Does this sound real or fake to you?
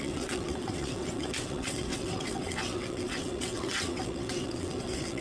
fake